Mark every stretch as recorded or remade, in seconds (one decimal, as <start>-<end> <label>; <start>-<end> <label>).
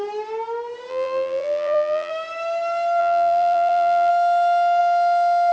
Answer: 0.0-0.9 recorded; 0.9-2.1 remade; 2.1-3.0 recorded; 3.0-4.1 remade; 4.1-5.5 recorded